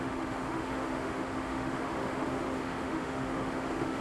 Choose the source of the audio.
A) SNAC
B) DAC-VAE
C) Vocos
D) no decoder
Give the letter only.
B